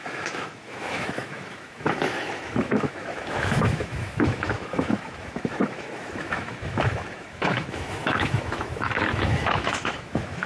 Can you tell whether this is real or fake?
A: fake